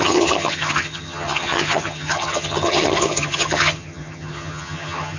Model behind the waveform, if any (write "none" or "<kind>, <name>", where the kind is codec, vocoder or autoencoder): vocoder, HiFi-GAN